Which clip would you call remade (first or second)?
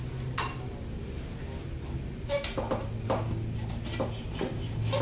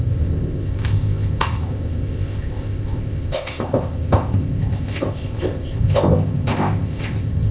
second